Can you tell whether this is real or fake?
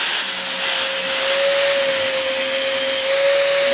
real